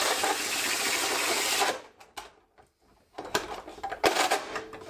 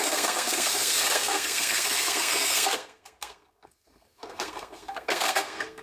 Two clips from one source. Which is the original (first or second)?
first